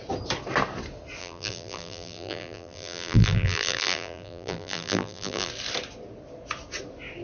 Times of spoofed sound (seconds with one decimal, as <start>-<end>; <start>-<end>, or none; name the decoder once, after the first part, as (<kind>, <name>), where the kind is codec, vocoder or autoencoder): 1.2-5.5 (vocoder, BigVGAN v2)